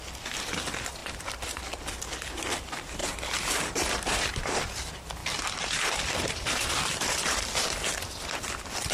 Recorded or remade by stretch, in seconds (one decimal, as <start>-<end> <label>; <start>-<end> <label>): 0.0-1.0 recorded; 1.0-1.8 remade; 1.8-3.0 recorded; 3.0-4.6 remade; 4.6-5.2 recorded; 5.2-7.8 remade; 7.8-8.9 recorded